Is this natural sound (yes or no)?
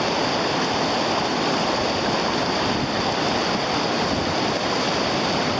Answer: yes